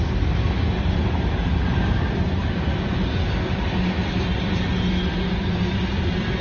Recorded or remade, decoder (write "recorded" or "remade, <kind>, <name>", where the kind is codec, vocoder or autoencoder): recorded